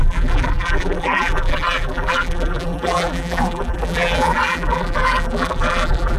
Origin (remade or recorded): remade